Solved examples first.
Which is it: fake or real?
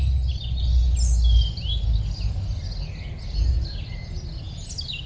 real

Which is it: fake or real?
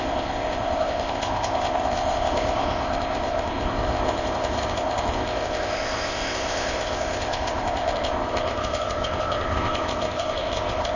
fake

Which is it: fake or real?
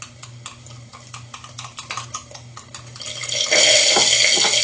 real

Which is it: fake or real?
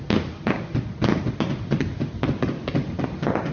real